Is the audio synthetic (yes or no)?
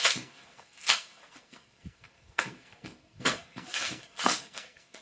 yes